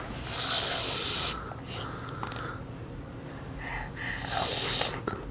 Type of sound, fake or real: real